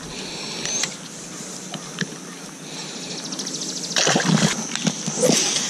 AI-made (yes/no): no